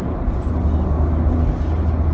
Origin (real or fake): real